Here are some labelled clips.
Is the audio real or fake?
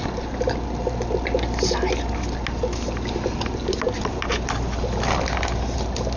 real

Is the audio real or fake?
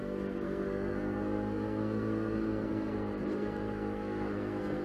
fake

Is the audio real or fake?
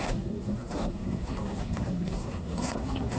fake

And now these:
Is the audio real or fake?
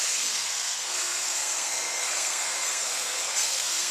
fake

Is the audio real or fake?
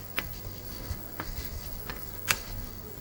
fake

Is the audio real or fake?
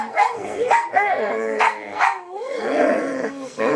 fake